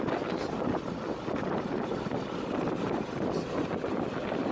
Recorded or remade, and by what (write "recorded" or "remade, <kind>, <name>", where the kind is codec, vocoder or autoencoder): recorded